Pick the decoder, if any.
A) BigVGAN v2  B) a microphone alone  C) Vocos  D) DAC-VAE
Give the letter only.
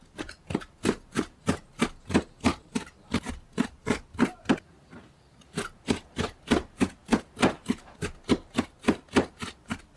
B